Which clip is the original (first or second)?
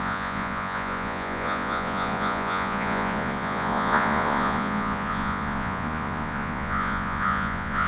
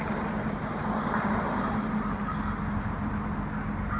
second